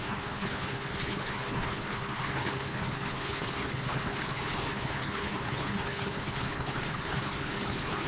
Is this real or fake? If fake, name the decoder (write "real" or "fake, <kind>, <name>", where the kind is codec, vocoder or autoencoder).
fake, codec, HILCodec